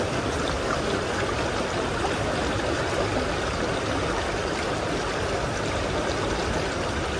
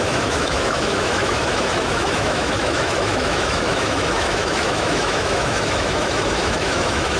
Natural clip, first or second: first